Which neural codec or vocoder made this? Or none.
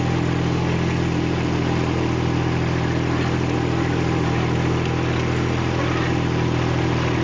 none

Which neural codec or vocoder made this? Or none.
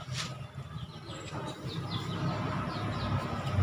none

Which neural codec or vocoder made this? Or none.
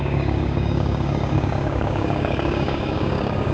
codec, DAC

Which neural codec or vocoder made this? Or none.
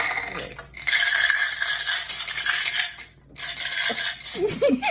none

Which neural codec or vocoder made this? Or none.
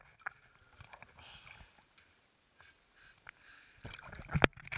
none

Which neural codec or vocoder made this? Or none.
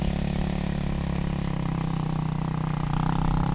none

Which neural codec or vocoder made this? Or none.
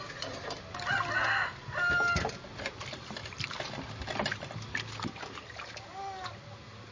none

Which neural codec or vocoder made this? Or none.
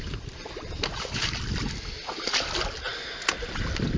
none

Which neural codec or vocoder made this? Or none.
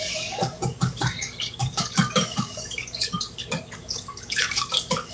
codec, DAC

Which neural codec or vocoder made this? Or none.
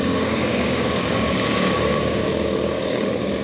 codec, DAC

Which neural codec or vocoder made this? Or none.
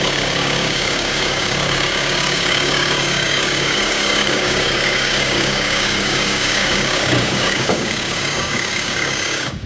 codec, DAC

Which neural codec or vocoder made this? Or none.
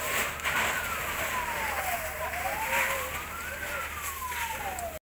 none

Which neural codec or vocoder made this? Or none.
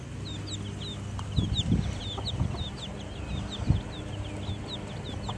none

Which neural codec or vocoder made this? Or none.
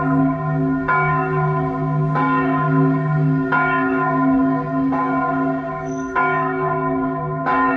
codec, DAC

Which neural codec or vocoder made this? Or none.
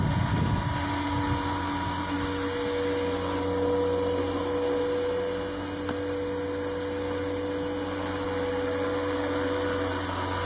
none